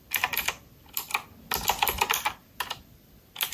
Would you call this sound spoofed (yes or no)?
no